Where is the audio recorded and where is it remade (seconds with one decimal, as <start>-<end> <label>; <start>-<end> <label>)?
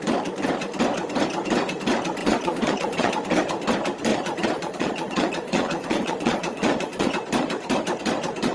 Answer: 0.0-2.2 recorded; 2.2-3.1 remade; 3.1-4.1 recorded; 4.1-7.1 remade; 7.1-8.5 recorded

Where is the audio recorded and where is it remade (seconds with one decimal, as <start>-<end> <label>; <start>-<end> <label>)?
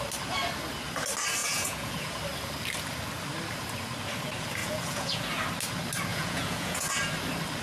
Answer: 0.0-1.4 recorded; 1.4-2.2 remade; 2.2-4.6 recorded; 4.6-5.2 remade; 5.2-6.1 recorded; 6.1-6.9 remade; 6.9-7.6 recorded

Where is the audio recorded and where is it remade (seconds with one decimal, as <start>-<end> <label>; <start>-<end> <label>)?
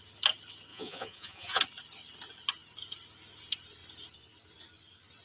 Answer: 0.0-0.7 recorded; 0.7-1.6 remade; 1.6-5.2 recorded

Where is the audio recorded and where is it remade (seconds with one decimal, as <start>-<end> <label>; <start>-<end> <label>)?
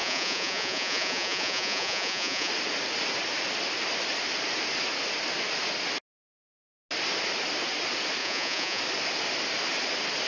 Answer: 0.0-2.5 remade; 2.5-8.2 recorded; 8.2-8.8 remade; 8.8-10.3 recorded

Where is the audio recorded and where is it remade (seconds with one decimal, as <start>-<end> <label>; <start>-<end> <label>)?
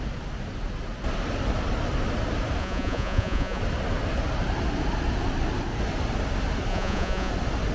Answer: 0.0-2.6 recorded; 2.6-3.6 remade; 3.6-6.7 recorded; 6.7-7.3 remade; 7.3-7.7 recorded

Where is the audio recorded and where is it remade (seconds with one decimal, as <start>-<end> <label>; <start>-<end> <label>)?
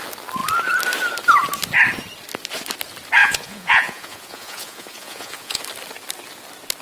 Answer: 0.0-3.2 recorded; 3.2-5.6 remade; 5.6-6.8 recorded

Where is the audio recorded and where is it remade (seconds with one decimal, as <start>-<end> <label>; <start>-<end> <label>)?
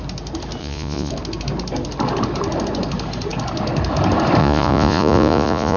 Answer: 0.0-0.6 recorded; 0.6-1.1 remade; 1.1-4.4 recorded; 4.4-5.8 remade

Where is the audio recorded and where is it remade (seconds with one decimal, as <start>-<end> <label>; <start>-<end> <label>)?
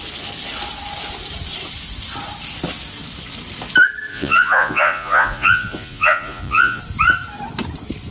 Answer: 0.0-4.1 recorded; 4.1-6.8 remade; 6.8-8.1 recorded